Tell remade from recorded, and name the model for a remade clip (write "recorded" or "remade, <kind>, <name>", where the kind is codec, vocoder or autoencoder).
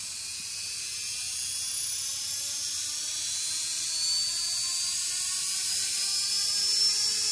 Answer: recorded